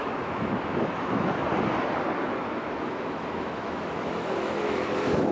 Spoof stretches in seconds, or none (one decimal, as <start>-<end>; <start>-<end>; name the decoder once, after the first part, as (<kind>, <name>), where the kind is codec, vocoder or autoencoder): 0.0-1.5 (autoencoder, DAC-VAE); 2.2-5.3